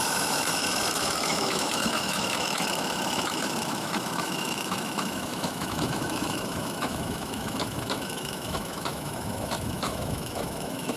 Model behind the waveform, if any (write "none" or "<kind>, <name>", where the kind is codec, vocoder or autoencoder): autoencoder, DAC-VAE